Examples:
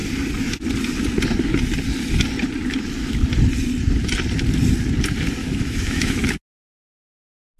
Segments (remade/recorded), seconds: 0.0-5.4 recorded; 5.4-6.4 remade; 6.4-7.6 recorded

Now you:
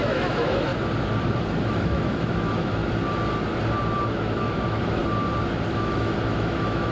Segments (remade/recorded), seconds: 0.0-0.7 remade; 0.7-1.6 recorded; 1.6-2.8 remade; 2.8-4.1 recorded; 4.1-5.0 remade; 5.0-5.7 recorded; 5.7-6.9 remade

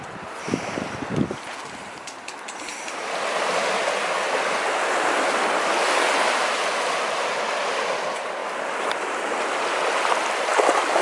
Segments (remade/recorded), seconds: 0.0-11.0 recorded